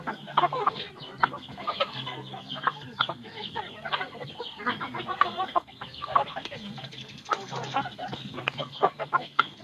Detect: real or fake fake